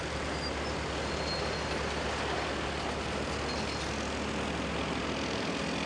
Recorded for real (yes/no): yes